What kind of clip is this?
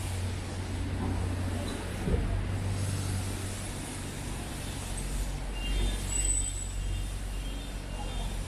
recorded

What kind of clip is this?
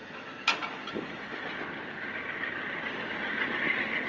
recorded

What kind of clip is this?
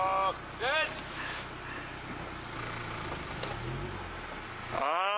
recorded